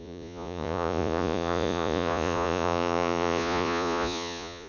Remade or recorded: remade